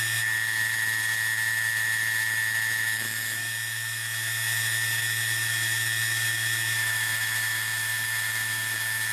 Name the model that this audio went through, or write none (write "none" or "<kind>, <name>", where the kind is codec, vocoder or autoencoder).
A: autoencoder, DAC-VAE